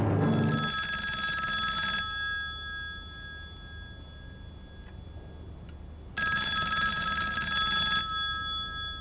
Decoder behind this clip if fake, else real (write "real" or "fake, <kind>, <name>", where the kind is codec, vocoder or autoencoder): real